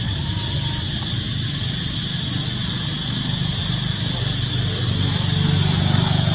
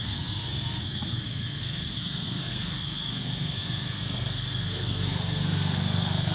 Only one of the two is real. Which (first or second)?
first